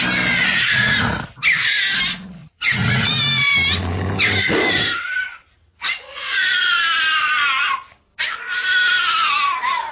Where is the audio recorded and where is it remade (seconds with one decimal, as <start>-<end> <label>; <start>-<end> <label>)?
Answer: 0.0-0.5 recorded; 0.5-1.4 remade; 1.4-2.4 recorded; 2.4-3.1 remade; 3.1-5.5 recorded; 5.5-6.8 remade; 6.8-9.9 recorded